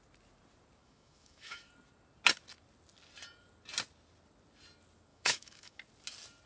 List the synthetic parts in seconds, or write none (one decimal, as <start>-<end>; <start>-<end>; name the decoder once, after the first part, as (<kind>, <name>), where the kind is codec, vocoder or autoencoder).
0.8-1.7 (autoencoder, DAC-VAE); 5.1-5.8